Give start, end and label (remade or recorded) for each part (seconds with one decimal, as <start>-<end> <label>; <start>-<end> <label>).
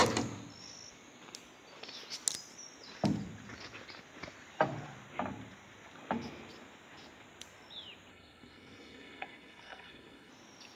0.0-8.1 recorded; 8.1-10.3 remade; 10.3-10.8 recorded